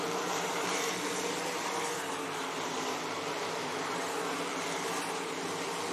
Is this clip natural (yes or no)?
no